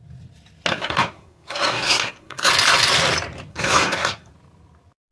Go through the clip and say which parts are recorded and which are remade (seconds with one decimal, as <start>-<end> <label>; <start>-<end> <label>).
0.0-0.7 recorded; 0.7-2.5 remade; 2.5-3.5 recorded; 3.5-4.3 remade; 4.3-5.1 recorded